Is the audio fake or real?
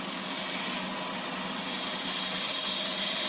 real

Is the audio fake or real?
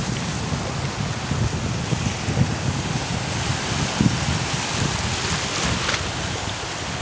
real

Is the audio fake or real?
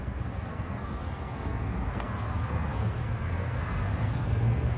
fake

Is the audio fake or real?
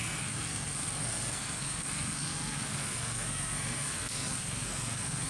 fake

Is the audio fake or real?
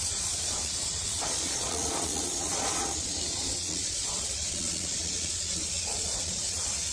fake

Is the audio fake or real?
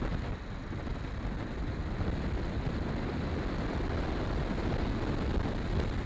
real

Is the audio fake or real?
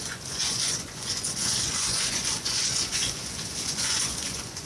fake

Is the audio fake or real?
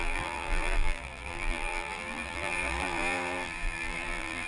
fake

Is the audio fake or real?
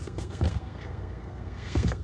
fake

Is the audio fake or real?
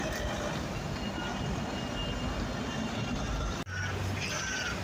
real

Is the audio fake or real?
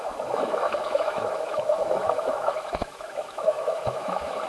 fake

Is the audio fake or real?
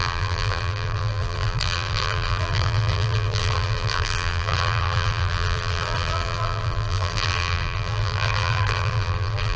fake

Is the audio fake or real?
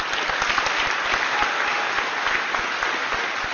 real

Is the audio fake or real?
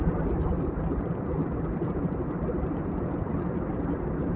real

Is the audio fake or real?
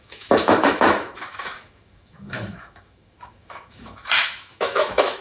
fake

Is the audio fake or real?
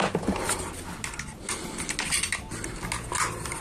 real